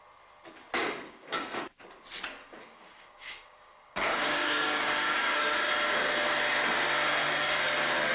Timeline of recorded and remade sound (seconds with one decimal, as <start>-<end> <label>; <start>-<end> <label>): 0.0-0.8 recorded; 0.8-1.8 remade; 1.8-2.4 recorded; 2.4-5.7 remade; 5.7-7.2 recorded; 7.2-8.1 remade